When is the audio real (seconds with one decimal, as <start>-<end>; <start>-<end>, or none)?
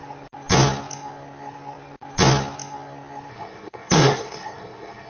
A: 0.0-3.3